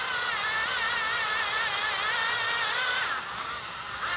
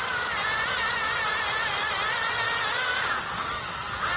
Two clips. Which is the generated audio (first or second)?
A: second